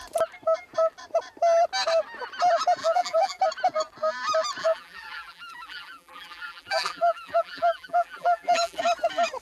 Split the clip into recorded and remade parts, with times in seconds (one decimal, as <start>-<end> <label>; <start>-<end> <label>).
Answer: 0.0-2.8 recorded; 2.8-3.4 remade; 3.4-4.6 recorded; 4.6-8.8 remade; 8.8-9.4 recorded